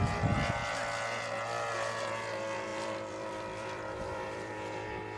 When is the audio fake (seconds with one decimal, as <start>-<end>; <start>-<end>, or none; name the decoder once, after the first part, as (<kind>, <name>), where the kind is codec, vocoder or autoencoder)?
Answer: 2.7-4.5 (vocoder, BigVGAN v2)